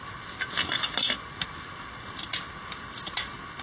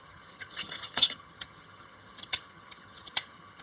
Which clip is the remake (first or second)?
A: second